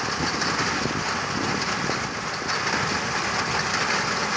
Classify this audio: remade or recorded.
recorded